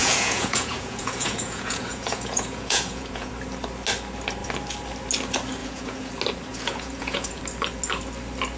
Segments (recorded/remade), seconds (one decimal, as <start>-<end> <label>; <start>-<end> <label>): 0.0-3.3 remade; 3.3-5.6 recorded; 5.6-6.1 remade; 6.1-6.5 recorded; 6.5-7.4 remade; 7.4-8.6 recorded